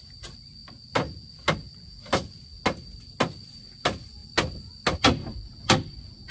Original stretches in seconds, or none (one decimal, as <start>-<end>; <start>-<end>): 0.0-6.3